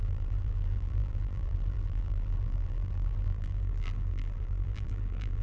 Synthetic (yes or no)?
yes